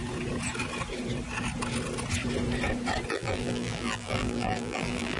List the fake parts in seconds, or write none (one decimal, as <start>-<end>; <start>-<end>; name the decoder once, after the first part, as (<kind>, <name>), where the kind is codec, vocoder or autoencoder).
3.1-5.2 (vocoder, BigVGAN v2)